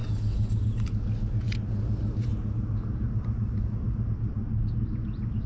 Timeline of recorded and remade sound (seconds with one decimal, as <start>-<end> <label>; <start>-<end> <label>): 0.0-5.5 recorded